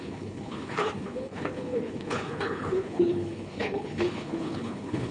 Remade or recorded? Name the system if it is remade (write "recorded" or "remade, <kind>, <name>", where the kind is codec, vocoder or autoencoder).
remade, codec, HILCodec